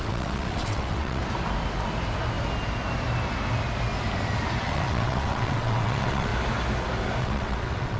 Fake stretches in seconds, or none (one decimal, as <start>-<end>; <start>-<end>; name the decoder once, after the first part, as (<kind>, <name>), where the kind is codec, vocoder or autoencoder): 0.0-1.2 (vocoder, WaveNeXt); 4.6-6.3; 7.2-8.0